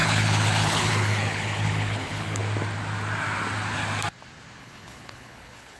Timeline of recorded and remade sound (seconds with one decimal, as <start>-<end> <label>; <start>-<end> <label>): 0.0-2.4 remade; 2.4-4.6 recorded; 4.6-5.8 remade